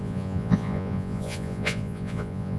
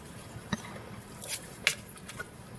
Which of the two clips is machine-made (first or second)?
first